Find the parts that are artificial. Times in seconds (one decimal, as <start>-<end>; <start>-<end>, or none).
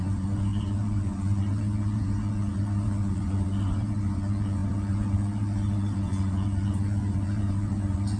0.0-8.2